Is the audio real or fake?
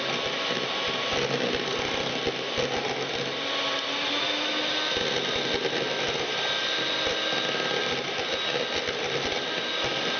real